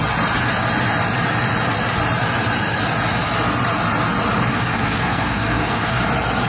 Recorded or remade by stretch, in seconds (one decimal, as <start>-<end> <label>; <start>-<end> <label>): 0.0-4.5 recorded; 4.5-6.0 remade; 6.0-6.5 recorded